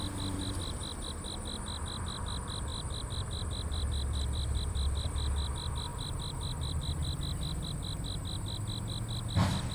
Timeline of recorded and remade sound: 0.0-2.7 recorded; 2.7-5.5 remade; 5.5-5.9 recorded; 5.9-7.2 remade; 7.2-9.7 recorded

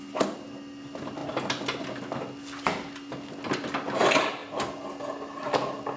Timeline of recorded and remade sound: 0.0-6.0 recorded

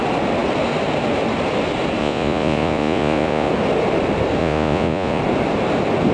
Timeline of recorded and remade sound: 0.0-2.0 recorded; 2.0-3.5 remade; 3.5-4.4 recorded; 4.4-5.2 remade; 5.2-6.1 recorded

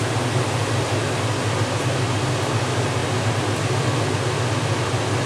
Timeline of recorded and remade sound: 0.0-5.3 recorded

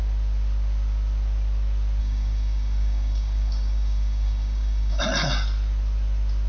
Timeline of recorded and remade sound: 0.0-2.0 recorded; 2.0-5.0 remade; 5.0-6.5 recorded